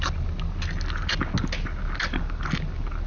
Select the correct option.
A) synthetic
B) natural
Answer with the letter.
B